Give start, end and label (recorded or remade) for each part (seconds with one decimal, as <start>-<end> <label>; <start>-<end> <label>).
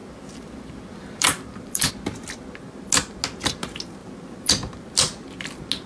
0.0-1.9 remade; 1.9-4.0 recorded; 4.0-4.7 remade; 4.7-5.9 recorded